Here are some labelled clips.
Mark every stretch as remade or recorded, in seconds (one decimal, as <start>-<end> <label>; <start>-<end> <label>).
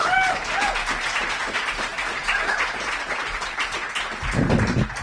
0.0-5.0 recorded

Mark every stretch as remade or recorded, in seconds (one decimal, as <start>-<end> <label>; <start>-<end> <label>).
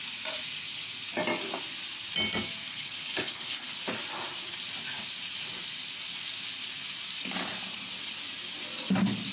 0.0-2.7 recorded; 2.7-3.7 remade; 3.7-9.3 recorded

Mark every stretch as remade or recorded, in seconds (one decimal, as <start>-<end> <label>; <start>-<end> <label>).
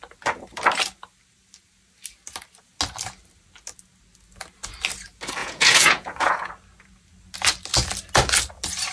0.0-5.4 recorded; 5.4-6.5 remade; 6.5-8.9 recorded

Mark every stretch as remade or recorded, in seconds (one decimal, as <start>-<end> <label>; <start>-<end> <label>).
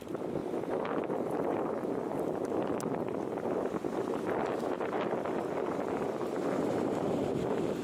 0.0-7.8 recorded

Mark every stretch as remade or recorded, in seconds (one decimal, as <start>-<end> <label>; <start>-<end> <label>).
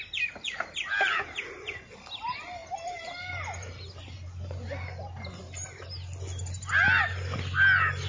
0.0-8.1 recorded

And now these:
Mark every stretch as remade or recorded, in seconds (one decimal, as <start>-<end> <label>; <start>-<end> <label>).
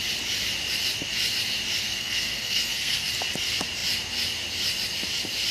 0.0-1.8 recorded; 1.8-3.1 remade; 3.1-5.5 recorded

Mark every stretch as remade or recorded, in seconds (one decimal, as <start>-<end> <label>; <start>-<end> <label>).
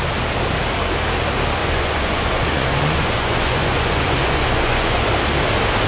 0.0-1.6 recorded; 1.6-5.1 remade; 5.1-5.9 recorded